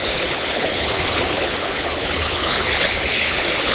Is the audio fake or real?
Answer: fake